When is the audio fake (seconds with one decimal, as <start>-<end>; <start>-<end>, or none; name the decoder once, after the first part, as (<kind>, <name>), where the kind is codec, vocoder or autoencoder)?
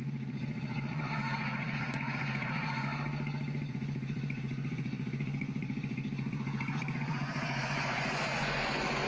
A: 0.0-2.9 (vocoder, Vocos); 3.7-9.1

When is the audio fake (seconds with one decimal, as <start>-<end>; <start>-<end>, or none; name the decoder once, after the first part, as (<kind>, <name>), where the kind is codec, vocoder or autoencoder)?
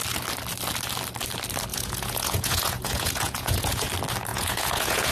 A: 1.7-3.9 (vocoder, Vocos); 4.3-5.1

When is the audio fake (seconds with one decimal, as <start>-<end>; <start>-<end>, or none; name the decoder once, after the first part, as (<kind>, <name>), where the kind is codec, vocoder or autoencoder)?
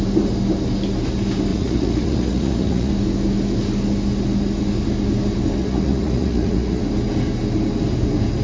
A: 1.5-2.9 (vocoder, Vocos); 5.6-6.8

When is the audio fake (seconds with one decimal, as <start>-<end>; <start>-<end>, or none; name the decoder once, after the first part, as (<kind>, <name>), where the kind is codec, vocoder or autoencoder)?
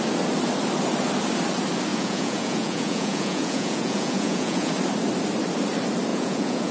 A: 1.9-4.7 (vocoder, Vocos); 6.1-6.7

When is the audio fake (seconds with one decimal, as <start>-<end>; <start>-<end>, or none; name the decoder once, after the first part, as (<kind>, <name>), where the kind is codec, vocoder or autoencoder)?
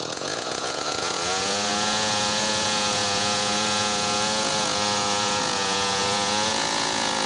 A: 0.0-7.3 (vocoder, Vocos)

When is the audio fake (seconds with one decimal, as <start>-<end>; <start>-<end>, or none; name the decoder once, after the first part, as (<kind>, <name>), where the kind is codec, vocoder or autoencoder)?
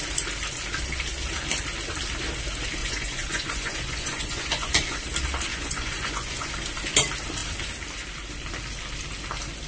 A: 2.8-5.0 (vocoder, Vocos); 5.5-6.5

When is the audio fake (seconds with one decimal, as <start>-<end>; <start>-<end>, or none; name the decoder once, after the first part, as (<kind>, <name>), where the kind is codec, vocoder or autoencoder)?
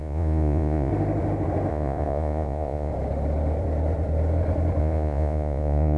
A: 0.0-0.9 (vocoder, Vocos); 1.7-2.9; 4.8-6.0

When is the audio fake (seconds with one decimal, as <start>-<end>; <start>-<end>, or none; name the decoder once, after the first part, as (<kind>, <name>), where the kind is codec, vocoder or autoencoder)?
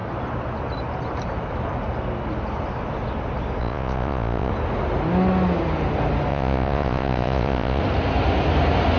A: 3.6-4.5 (vocoder, Vocos); 6.3-7.8